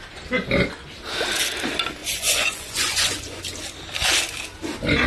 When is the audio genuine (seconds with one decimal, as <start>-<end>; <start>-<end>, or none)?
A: 0.0-2.0; 3.4-5.1